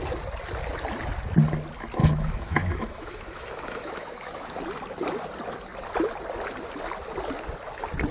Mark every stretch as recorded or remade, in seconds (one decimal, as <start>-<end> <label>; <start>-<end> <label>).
0.0-2.0 recorded; 2.0-4.6 remade; 4.6-8.1 recorded